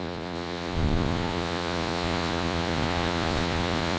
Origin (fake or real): fake